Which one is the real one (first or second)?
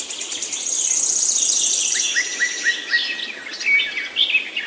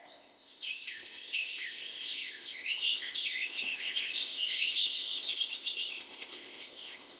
first